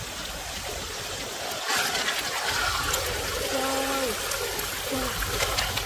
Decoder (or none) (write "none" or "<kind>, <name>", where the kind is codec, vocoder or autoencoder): none